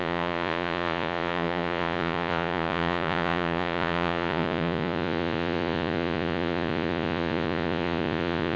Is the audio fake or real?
fake